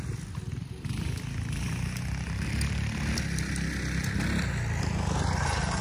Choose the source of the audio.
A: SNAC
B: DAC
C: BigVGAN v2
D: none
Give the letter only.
D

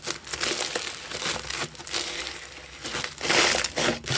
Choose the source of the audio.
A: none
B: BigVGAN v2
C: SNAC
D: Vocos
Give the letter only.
A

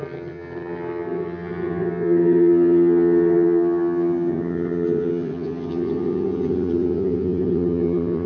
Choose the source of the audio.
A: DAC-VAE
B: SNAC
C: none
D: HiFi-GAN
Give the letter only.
D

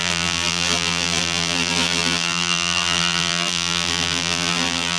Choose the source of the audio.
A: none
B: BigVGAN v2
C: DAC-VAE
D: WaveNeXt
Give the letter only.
B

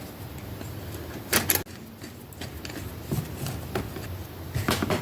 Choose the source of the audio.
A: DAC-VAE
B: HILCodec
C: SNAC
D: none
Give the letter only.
D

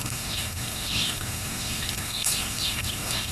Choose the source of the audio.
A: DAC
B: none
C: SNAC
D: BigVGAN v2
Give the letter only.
C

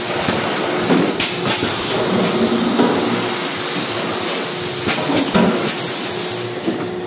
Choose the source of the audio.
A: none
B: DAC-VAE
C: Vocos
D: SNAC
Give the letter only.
A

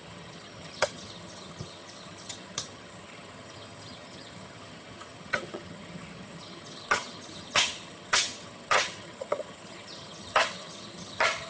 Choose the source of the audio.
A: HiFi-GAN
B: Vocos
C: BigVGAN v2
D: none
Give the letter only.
A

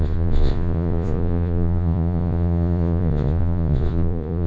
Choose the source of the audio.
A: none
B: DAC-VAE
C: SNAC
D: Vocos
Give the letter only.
D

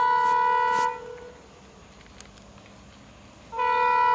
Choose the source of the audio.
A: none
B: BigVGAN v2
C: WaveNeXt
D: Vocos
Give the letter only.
A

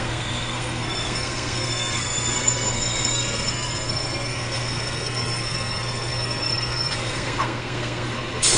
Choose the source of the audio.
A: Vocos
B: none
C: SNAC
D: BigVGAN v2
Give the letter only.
C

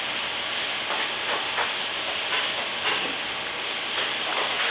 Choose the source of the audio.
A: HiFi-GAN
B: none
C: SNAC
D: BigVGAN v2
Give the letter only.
B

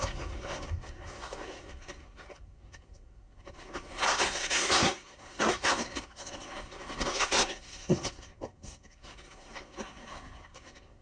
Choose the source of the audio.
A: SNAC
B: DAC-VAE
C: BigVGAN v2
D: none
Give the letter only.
A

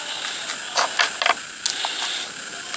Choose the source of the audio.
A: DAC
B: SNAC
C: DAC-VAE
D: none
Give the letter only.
D